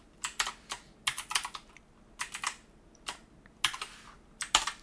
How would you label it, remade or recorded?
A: recorded